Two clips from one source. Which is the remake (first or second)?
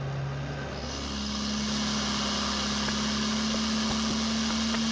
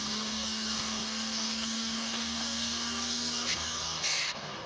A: second